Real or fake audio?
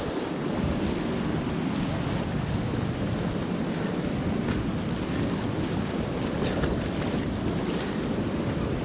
real